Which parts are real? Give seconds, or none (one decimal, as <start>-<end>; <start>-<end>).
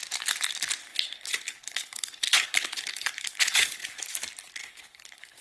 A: 0.0-0.9; 4.0-4.6